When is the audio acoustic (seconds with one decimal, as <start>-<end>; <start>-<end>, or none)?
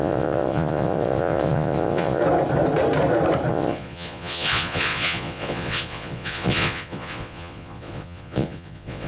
2.2-3.5